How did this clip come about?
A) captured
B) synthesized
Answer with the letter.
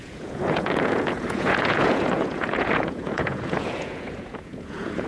B